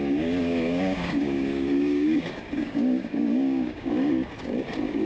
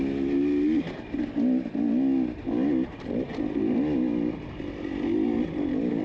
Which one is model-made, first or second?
first